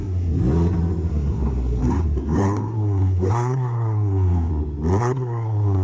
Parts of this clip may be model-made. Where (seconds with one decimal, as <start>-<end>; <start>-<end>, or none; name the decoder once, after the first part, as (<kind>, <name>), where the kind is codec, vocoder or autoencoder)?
0.0-0.4 (codec, SNAC); 1.1-4.5; 5.0-5.8